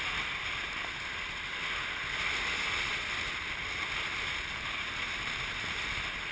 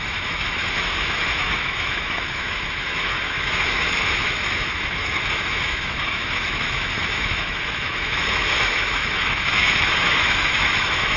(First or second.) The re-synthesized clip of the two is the second